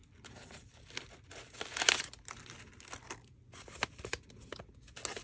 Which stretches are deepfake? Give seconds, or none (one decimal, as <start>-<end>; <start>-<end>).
none